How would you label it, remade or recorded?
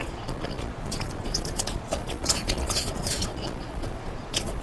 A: remade